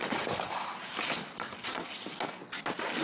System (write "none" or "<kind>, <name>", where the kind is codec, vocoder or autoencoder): none